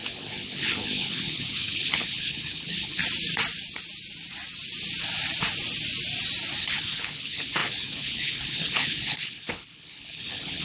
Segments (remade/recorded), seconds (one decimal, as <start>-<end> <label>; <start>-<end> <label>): 0.0-3.0 remade; 3.0-6.6 recorded; 6.6-10.6 remade